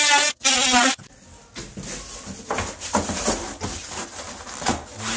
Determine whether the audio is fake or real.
real